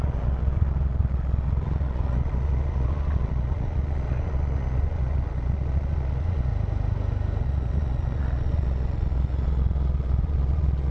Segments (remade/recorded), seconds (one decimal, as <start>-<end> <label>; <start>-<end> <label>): 0.0-6.5 remade; 6.5-7.4 recorded; 7.4-10.9 remade

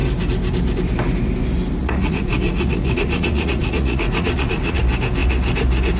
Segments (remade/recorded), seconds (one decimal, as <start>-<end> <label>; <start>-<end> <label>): 0.0-1.8 recorded; 1.8-4.8 remade; 4.8-6.0 recorded

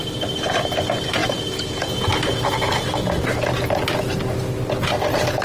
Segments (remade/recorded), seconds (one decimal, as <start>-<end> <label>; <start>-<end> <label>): 0.0-1.2 recorded; 1.2-2.0 remade; 2.0-5.4 recorded